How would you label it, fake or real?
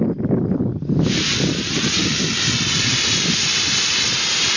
real